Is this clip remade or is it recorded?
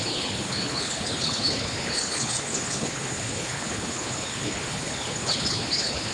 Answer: remade